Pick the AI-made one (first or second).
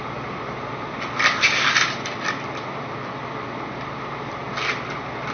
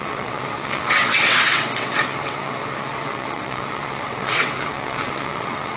second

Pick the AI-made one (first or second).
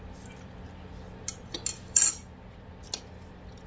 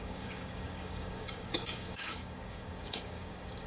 second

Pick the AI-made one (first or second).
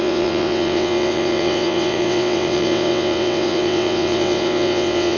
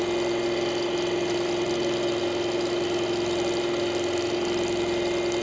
first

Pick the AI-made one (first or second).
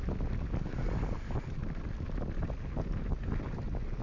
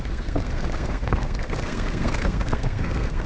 second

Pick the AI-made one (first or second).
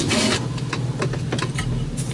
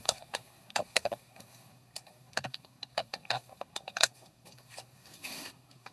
second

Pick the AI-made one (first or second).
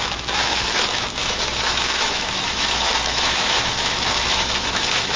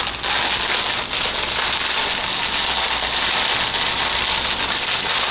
first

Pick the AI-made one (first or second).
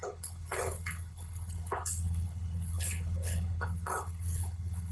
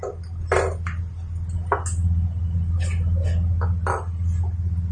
first